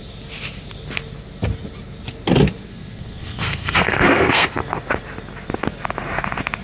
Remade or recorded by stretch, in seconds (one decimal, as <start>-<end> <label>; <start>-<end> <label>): 0.0-2.7 recorded; 2.7-4.6 remade; 4.6-6.6 recorded

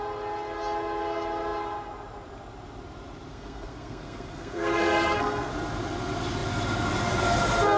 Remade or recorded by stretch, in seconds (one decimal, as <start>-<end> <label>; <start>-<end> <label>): 0.0-3.3 recorded; 3.3-5.5 remade; 5.5-7.8 recorded

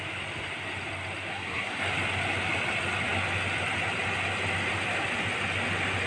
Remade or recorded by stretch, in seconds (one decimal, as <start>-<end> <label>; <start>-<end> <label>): 0.0-1.3 recorded; 1.3-1.8 remade; 1.8-6.1 recorded

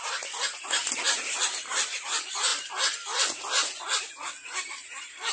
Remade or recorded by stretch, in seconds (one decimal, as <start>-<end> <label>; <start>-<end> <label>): 0.0-5.3 recorded

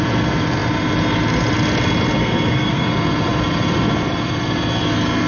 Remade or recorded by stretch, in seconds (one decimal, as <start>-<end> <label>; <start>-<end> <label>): 0.0-2.2 recorded; 2.2-2.9 remade; 2.9-5.3 recorded

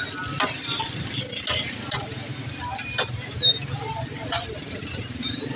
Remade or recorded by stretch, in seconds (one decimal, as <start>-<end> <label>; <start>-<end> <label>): 0.0-5.6 recorded

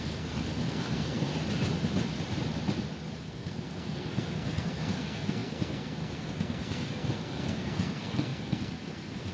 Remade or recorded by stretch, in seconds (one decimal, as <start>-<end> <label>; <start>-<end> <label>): 0.0-1.3 remade; 1.3-3.2 recorded; 3.2-9.3 remade